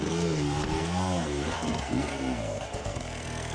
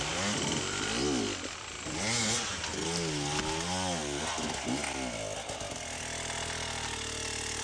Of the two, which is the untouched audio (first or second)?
second